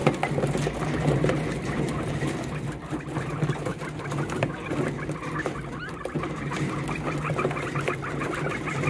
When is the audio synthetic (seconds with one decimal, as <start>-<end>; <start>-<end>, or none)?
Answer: 2.0-3.7